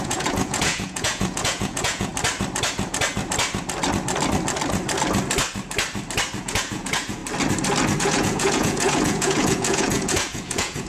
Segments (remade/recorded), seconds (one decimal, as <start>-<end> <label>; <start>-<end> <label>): 0.0-2.1 remade; 2.1-6.4 recorded; 6.4-7.2 remade; 7.2-8.0 recorded; 8.0-10.9 remade